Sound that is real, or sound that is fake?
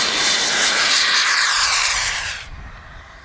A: fake